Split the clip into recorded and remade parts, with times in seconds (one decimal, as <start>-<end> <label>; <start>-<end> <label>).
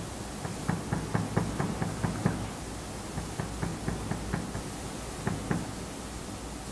0.0-6.7 recorded